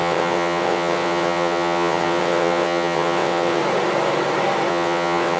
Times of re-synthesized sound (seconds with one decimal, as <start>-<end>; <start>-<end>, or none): 0.0-3.6; 4.7-5.4